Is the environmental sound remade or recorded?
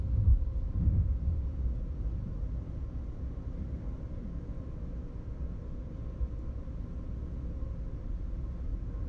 recorded